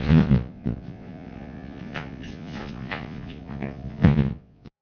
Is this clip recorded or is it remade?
remade